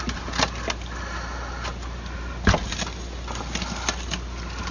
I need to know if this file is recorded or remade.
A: recorded